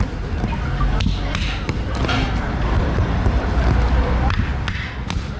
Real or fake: real